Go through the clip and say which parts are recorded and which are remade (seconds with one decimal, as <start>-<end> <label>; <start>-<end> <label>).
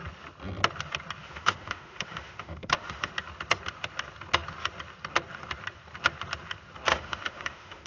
0.0-1.2 recorded; 1.2-3.1 remade; 3.1-6.9 recorded; 6.9-7.9 remade